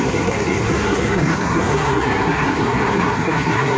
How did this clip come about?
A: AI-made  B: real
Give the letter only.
A